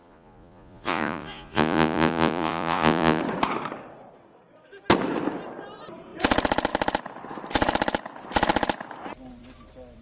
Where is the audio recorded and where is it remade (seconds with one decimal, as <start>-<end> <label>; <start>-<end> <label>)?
0.0-3.2 remade; 3.2-10.0 recorded